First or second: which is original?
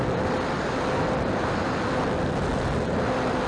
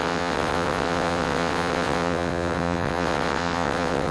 first